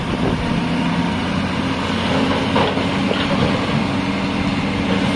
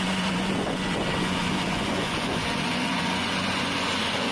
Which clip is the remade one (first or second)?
second